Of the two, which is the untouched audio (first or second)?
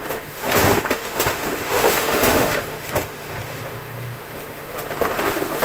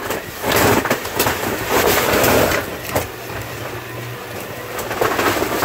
second